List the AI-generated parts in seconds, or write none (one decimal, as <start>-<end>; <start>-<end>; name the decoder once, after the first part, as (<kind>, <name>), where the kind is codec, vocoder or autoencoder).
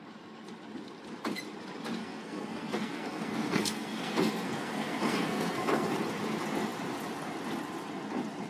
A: 2.0-5.9 (codec, SNAC)